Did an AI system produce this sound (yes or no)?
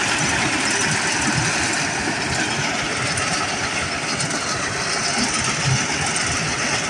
no